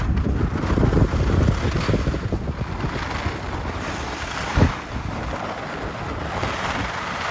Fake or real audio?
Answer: real